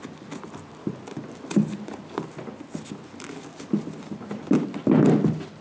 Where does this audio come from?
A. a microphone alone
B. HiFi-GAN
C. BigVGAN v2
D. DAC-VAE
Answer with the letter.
A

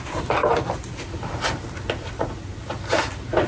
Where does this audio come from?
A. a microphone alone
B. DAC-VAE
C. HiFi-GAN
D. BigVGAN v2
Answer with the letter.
A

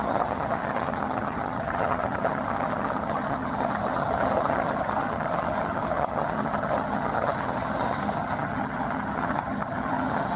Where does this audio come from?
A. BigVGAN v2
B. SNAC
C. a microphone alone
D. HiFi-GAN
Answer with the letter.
D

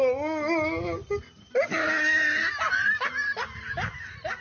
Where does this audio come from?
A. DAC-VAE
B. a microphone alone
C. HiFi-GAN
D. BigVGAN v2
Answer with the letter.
B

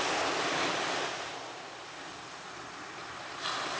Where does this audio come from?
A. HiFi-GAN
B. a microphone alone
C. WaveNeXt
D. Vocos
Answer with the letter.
B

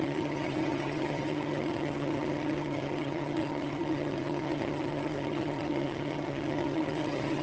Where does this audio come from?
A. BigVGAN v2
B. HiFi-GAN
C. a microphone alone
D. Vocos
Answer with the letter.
B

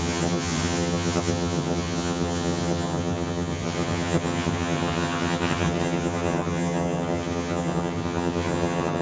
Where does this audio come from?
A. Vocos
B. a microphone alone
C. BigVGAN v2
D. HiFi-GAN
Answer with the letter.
D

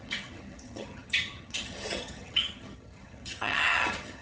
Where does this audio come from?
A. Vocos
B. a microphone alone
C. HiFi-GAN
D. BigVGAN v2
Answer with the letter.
C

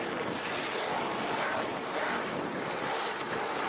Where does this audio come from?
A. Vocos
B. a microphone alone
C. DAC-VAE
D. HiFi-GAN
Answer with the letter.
B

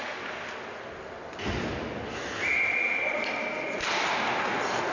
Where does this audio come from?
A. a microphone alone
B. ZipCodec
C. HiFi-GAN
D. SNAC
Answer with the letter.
A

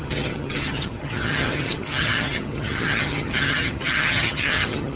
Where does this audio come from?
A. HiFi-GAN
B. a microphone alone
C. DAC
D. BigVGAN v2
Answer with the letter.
A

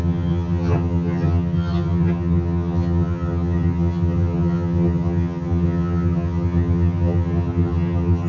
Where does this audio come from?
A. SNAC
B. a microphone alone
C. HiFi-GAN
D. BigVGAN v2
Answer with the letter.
C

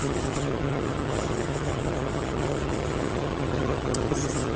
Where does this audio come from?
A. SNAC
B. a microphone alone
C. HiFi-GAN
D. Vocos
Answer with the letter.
C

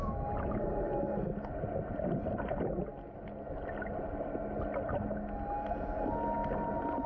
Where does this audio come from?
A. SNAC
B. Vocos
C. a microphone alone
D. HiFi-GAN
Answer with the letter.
C